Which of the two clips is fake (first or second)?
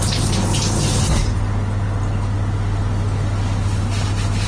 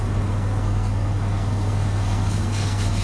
second